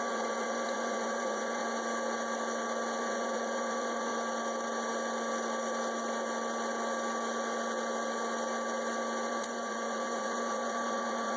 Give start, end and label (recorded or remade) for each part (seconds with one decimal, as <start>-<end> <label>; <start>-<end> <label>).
0.0-1.6 remade; 1.6-3.0 recorded; 3.0-4.1 remade; 4.1-9.3 recorded; 9.3-11.4 remade